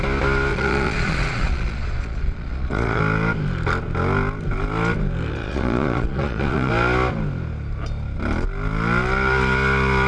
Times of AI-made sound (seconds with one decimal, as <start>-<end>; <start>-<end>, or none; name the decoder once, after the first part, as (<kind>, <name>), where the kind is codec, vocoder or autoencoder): 0.5-3.0 (vocoder, Vocos); 5.4-6.7